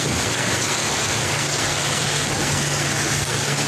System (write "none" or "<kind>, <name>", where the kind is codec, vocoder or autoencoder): codec, SNAC